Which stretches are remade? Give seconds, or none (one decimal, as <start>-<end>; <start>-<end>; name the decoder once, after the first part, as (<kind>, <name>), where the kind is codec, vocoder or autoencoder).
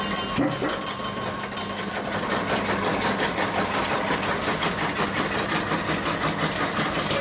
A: none